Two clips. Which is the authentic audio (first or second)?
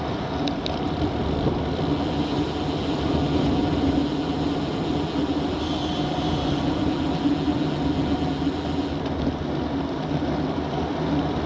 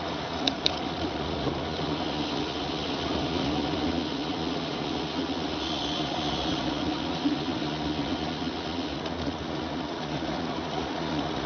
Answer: first